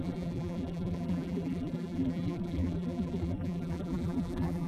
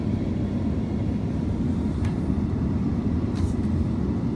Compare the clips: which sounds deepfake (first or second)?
first